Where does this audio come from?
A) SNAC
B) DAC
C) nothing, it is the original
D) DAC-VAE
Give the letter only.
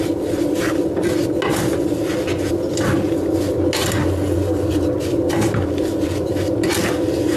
C